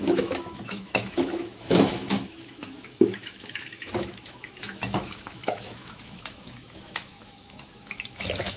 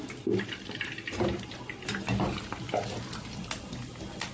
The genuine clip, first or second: second